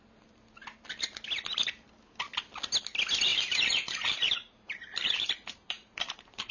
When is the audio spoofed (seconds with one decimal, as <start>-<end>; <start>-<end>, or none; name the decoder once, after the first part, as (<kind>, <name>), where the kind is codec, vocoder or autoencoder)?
3.3-6.5 (vocoder, BigVGAN v2)